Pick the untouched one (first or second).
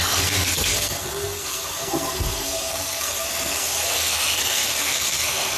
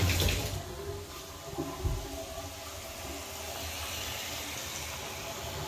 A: second